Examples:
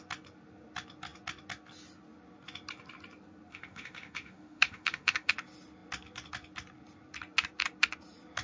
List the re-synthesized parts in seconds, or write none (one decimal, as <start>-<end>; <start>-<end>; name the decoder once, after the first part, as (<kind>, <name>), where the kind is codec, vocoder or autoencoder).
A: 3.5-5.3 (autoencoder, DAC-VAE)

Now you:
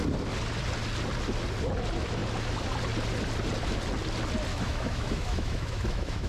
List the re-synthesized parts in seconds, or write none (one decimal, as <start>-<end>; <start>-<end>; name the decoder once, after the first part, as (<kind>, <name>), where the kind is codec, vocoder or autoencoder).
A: 4.5-6.3 (autoencoder, DAC-VAE)

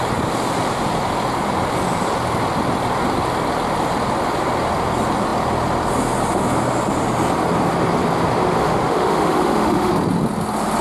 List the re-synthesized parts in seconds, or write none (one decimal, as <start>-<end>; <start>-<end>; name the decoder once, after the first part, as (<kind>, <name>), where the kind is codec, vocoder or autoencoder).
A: 8.6-9.9 (autoencoder, DAC-VAE)

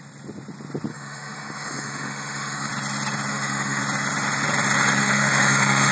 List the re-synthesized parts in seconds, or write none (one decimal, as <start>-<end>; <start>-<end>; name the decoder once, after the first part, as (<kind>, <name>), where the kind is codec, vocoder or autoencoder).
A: 0.9-2.7 (autoencoder, DAC-VAE); 3.3-3.8; 5.0-5.9

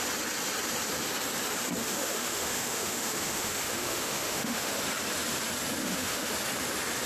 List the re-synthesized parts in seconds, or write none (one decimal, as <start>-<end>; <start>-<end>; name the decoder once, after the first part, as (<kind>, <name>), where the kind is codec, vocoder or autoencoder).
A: 1.8-4.7 (autoencoder, DAC-VAE); 5.8-6.3

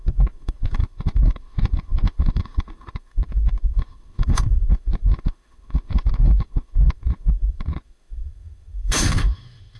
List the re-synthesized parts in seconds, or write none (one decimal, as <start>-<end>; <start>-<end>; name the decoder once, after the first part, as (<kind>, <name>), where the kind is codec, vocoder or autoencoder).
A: 0.0-9.8 (autoencoder, DAC-VAE)

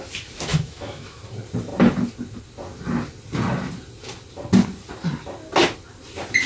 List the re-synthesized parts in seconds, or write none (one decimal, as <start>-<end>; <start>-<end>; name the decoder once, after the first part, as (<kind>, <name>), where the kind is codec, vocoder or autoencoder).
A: 0.5-1.2 (autoencoder, DAC-VAE)

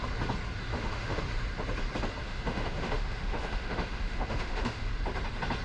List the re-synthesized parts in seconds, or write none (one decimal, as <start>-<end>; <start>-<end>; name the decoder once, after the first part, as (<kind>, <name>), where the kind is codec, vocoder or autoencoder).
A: 0.7-1.2 (autoencoder, DAC-VAE); 2.2-4.9